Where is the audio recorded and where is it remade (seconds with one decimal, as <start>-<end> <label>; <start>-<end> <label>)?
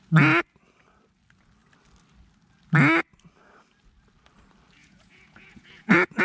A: 0.0-4.8 recorded; 4.8-6.2 remade